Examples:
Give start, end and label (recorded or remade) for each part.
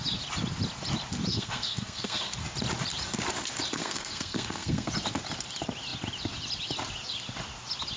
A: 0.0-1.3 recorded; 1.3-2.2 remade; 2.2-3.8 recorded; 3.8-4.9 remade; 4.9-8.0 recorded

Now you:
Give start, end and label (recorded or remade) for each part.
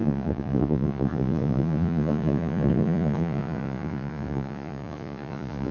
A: 0.0-5.7 remade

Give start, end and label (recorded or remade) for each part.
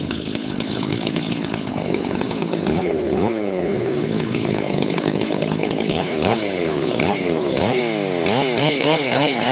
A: 0.0-7.8 remade; 7.8-8.6 recorded; 8.6-9.5 remade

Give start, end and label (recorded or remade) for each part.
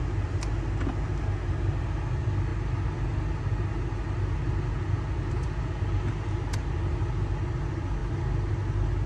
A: 0.0-9.1 recorded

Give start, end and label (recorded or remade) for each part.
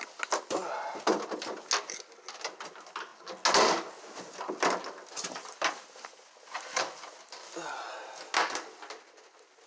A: 0.0-9.7 recorded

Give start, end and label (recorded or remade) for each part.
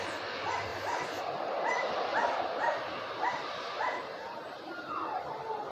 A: 0.0-0.7 recorded; 0.7-1.2 remade; 1.2-2.1 recorded; 2.1-5.3 remade; 5.3-5.7 recorded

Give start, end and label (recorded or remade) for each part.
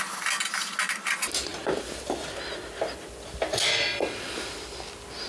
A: 0.0-5.3 recorded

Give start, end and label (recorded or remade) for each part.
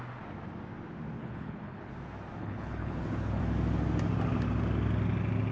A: 0.0-1.2 recorded; 1.2-1.9 remade; 1.9-2.4 recorded; 2.4-3.4 remade; 3.4-5.5 recorded